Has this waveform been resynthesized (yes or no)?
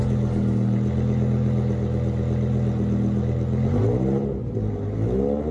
no